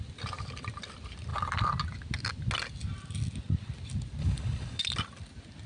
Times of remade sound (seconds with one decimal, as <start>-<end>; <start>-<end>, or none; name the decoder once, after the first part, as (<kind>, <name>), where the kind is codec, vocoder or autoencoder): 4.2-4.8 (codec, HILCodec)